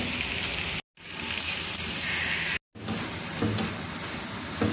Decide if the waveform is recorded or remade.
recorded